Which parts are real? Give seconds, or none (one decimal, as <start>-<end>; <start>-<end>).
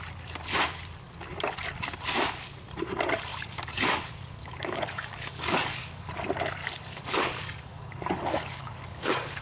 0.0-3.3; 4.0-4.4; 6.1-6.6